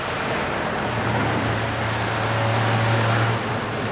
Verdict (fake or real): real